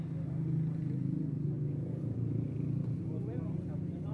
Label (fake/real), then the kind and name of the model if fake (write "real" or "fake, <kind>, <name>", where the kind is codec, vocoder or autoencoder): real